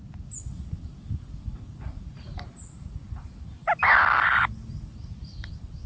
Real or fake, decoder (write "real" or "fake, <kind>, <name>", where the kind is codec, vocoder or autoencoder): real